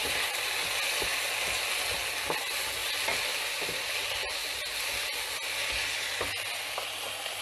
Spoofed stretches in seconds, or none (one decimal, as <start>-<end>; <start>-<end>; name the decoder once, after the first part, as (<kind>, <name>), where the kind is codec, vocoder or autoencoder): 0.0-0.5 (vocoder, BigVGAN v2)